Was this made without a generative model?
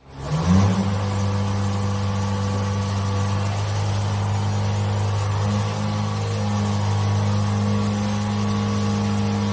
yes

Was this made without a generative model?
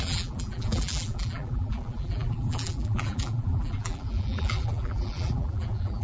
no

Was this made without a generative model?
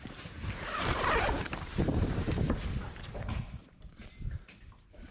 no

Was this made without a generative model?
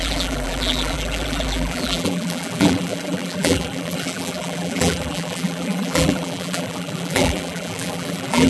no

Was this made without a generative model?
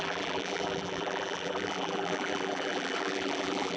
no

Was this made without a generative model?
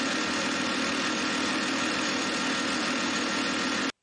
yes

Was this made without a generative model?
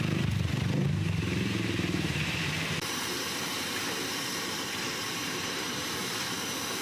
no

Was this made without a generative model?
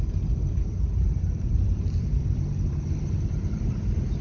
no